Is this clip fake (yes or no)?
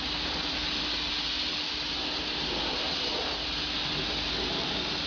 no